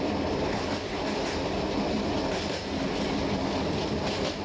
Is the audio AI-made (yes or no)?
no